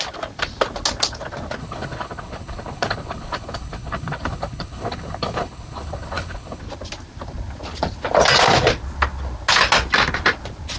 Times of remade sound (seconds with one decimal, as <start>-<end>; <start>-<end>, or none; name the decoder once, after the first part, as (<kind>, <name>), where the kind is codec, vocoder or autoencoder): 1.6-6.6 (codec, HILCodec)